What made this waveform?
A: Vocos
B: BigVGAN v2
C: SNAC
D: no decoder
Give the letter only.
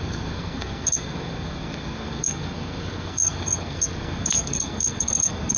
C